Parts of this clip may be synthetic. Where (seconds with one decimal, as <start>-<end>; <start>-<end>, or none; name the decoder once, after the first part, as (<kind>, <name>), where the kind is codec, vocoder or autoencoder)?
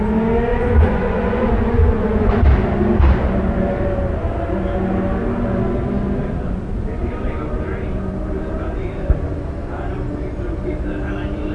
0.5-2.3 (vocoder, Vocos)